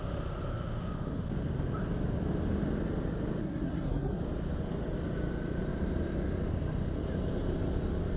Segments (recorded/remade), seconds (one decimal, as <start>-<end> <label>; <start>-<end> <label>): 0.0-3.4 recorded; 3.4-4.2 remade; 4.2-8.2 recorded